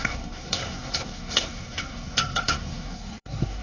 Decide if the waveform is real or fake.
fake